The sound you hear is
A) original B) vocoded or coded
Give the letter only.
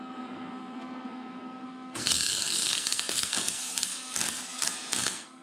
B